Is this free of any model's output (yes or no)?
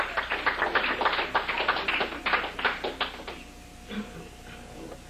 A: yes